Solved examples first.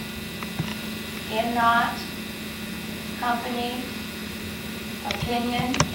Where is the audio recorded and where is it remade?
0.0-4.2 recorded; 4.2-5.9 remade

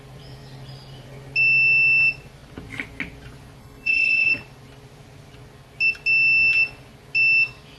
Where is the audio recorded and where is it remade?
0.0-3.6 recorded; 3.6-4.3 remade; 4.3-7.8 recorded

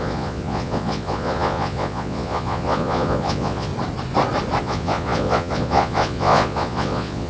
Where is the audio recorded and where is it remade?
0.0-3.7 remade; 3.7-4.6 recorded; 4.6-7.3 remade

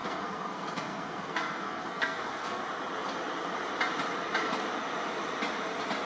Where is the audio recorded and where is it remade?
0.0-2.6 remade; 2.6-6.1 recorded

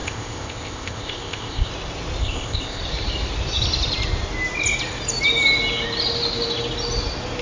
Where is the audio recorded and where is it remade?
0.0-1.7 remade; 1.7-2.2 recorded; 2.2-2.8 remade; 2.8-7.4 recorded

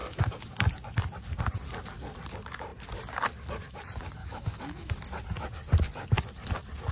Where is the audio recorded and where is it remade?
0.0-0.7 remade; 0.7-4.2 recorded; 4.2-4.9 remade; 4.9-6.9 recorded

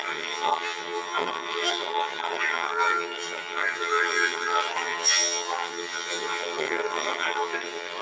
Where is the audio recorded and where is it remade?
0.0-8.0 remade